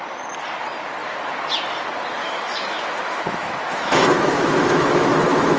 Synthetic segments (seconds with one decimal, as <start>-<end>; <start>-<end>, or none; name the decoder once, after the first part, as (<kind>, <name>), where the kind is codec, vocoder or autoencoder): 2.2-5.6 (autoencoder, DAC-VAE)